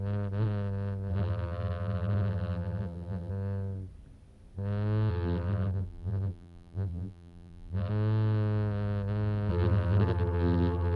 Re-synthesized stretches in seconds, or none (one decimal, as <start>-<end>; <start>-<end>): 1.1-3.3; 5.1-7.9; 9.5-11.0